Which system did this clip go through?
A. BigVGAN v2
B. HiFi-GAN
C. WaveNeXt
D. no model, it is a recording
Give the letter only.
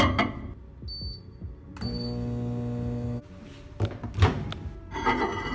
D